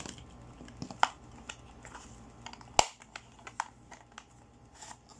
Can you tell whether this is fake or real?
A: real